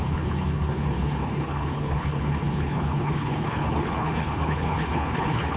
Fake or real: fake